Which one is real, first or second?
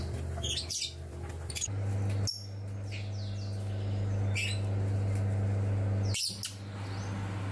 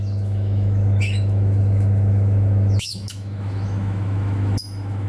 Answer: first